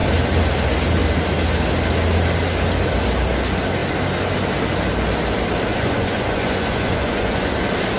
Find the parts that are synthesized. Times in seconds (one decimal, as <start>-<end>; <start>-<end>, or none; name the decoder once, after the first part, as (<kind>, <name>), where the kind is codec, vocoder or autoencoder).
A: 5.7-7.5 (vocoder, Vocos)